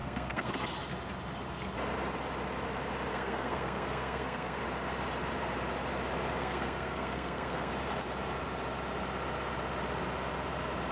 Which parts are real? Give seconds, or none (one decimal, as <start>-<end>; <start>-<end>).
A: 0.5-3.1; 4.6-6.4; 7.7-10.9